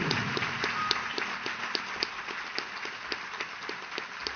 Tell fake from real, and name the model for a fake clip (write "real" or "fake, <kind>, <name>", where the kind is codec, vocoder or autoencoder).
real